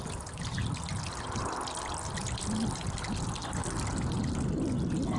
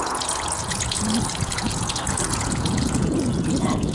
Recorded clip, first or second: first